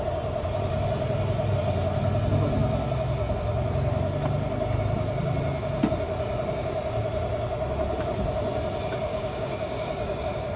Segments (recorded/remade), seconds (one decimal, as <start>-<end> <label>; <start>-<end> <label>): 0.0-9.1 recorded; 9.1-10.2 remade; 10.2-10.6 recorded